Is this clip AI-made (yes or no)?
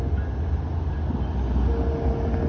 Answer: no